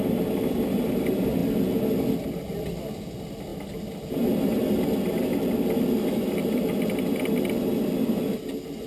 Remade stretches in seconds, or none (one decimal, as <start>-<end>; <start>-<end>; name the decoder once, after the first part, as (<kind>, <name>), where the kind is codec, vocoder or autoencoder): none